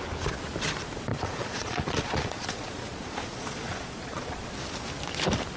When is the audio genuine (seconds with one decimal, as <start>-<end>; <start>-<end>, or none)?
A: 0.0-1.1; 4.5-5.6